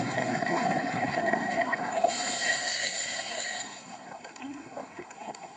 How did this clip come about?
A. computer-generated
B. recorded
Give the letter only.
A